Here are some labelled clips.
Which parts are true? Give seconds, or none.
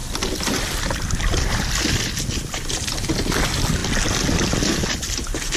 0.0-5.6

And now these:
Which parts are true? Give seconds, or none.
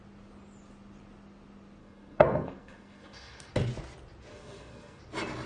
0.0-1.8; 3.5-4.3; 5.0-5.5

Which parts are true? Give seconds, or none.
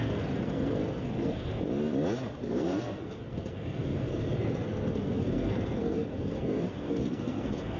1.5-2.5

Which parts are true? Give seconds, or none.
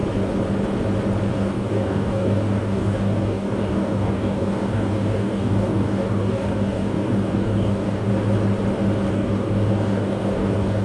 0.0-1.3; 8.1-9.1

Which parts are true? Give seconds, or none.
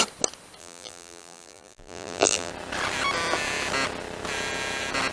0.0-0.6; 2.5-5.1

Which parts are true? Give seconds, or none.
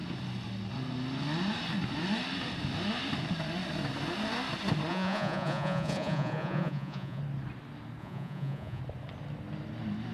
0.0-4.9; 7.2-8.0; 8.8-10.1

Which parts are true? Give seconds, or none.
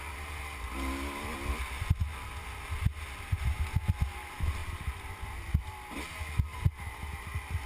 0.0-6.5; 7.2-7.7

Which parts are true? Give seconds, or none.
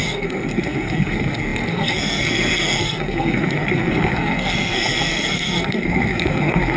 none